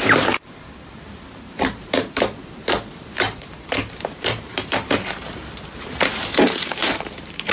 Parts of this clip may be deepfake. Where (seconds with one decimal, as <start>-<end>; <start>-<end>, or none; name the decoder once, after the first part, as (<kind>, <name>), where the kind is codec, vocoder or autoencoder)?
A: 0.0-2.4 (vocoder, BigVGAN v2); 2.9-7.5